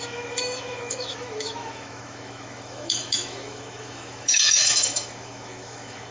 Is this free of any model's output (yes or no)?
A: no